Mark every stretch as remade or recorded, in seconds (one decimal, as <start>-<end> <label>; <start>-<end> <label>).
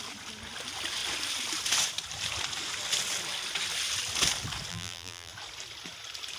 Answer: 0.0-4.7 recorded; 4.7-5.3 remade; 5.3-6.4 recorded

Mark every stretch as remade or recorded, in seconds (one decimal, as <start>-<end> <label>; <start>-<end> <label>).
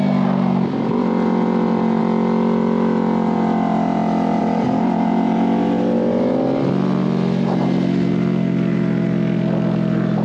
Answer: 0.0-10.2 recorded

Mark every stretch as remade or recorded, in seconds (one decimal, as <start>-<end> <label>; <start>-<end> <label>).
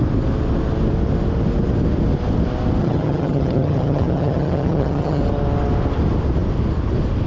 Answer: 0.0-2.8 recorded; 2.8-5.2 remade; 5.2-7.3 recorded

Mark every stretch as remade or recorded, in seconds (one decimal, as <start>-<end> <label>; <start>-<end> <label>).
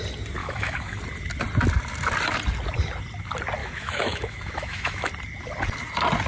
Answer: 0.0-0.4 recorded; 0.4-1.0 remade; 1.0-3.6 recorded; 3.6-5.1 remade; 5.1-6.3 recorded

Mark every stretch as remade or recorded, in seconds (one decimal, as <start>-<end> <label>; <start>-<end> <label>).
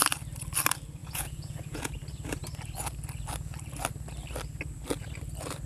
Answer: 0.0-1.0 recorded; 1.0-1.9 remade; 1.9-5.7 recorded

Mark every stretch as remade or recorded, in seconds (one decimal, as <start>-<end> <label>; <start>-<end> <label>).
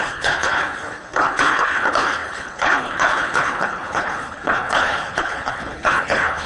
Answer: 0.0-6.5 remade